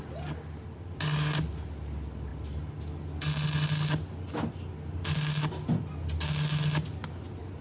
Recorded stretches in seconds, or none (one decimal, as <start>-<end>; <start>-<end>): 0.0-7.6